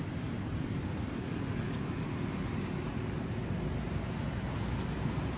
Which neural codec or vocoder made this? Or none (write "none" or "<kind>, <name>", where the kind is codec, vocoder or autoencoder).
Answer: none